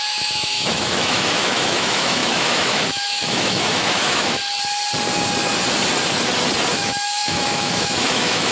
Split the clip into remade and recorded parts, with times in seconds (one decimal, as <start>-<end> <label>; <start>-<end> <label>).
0.0-4.4 remade; 4.4-6.7 recorded; 6.7-8.5 remade